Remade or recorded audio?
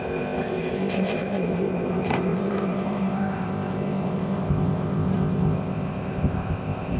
remade